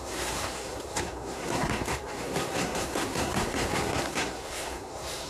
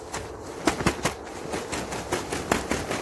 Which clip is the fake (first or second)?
first